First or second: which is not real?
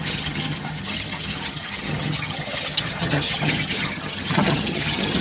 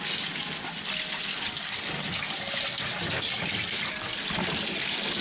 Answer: first